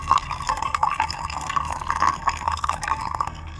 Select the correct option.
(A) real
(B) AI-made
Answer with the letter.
B